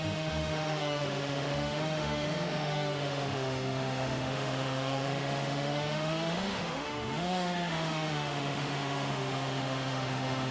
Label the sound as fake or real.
fake